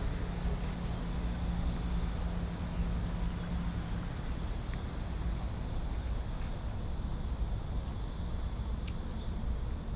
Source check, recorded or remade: recorded